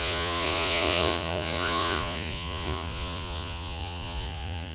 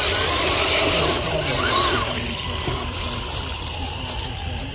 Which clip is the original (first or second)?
second